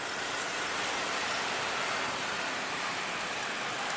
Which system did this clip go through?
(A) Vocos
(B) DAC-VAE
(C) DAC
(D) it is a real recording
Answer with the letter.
D